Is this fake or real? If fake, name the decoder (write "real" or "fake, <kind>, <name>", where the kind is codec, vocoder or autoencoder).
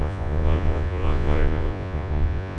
fake, vocoder, Vocos